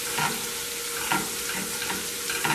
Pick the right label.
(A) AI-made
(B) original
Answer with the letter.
B